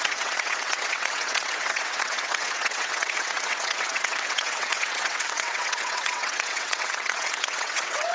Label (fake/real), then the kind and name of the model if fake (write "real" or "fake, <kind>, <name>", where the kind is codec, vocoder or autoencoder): fake, vocoder, WaveNeXt